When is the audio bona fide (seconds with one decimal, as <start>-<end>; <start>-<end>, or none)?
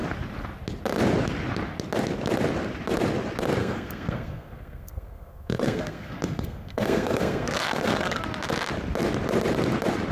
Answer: 0.0-3.6; 8.2-10.1